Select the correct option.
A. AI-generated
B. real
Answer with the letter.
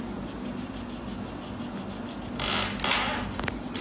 B